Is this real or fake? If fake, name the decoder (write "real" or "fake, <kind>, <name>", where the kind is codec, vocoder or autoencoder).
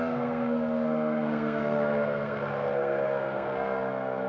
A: fake, codec, SNAC